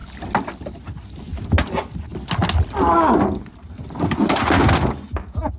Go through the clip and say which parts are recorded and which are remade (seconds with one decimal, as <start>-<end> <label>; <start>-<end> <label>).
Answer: 0.0-5.6 recorded